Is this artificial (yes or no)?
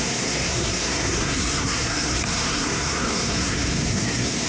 yes